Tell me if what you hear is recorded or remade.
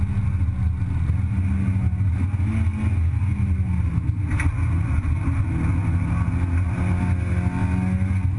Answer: recorded